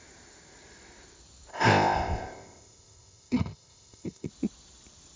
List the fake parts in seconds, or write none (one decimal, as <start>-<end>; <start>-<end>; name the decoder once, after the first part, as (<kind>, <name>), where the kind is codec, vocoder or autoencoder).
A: 1.5-4.3 (codec, ZipCodec)